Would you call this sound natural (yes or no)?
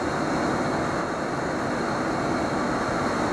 yes